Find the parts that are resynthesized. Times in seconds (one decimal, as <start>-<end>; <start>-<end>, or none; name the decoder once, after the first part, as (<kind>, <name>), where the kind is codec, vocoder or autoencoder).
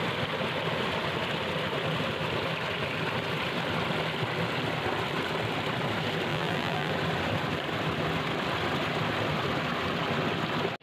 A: 6.3-6.9 (vocoder, BigVGAN v2)